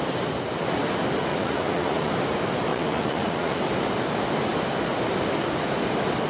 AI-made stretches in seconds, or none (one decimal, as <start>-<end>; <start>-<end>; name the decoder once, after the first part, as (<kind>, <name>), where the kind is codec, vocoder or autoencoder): 1.3-2.1 (vocoder, Vocos); 2.7-3.6